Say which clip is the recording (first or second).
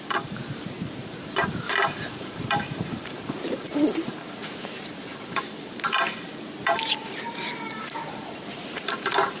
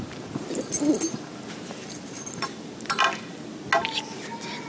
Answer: second